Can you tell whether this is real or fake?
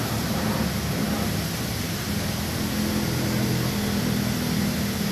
real